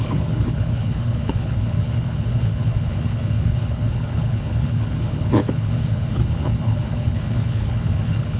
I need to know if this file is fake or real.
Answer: fake